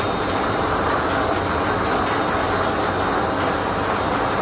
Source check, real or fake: real